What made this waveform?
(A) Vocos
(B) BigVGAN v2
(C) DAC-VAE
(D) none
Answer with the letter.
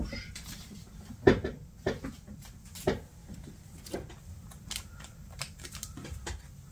D